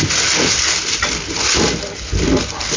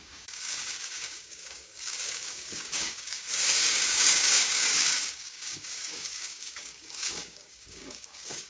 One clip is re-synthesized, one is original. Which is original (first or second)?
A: first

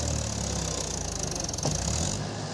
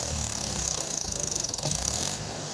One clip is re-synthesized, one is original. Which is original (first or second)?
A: first